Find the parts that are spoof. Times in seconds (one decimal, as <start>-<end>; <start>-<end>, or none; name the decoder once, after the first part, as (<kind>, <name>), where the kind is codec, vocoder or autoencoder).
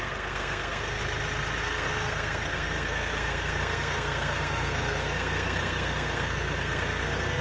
0.0-1.0 (codec, SNAC); 1.6-7.4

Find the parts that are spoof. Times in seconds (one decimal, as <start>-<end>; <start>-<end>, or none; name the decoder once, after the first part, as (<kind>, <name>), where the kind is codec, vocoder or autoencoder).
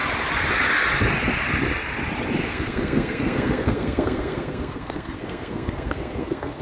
2.4-6.6 (codec, SNAC)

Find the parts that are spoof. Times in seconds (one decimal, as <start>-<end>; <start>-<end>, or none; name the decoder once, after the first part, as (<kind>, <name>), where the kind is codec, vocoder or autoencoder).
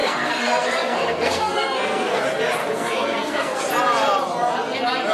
0.0-2.2 (codec, SNAC); 2.6-3.6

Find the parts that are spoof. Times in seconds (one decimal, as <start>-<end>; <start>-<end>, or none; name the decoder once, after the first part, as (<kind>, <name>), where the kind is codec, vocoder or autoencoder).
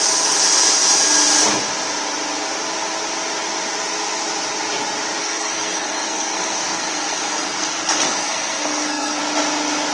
5.2-9.2 (codec, SNAC)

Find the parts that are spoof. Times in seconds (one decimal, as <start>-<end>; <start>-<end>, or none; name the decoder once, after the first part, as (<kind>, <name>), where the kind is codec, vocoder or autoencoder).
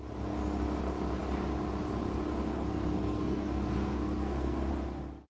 2.5-4.7 (codec, SNAC)